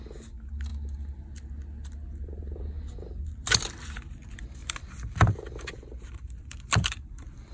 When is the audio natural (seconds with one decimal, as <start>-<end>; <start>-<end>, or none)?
0.0-4.6